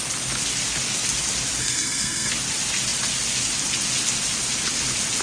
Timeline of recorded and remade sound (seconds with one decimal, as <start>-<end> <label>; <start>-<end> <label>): 0.0-1.6 recorded; 1.6-2.3 remade; 2.3-5.2 recorded